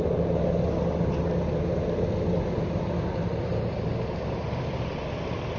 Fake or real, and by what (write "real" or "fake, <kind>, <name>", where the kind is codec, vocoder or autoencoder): real